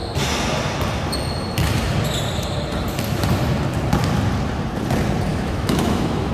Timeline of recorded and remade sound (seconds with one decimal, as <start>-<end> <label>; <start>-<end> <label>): 0.0-5.3 recorded; 5.3-6.3 remade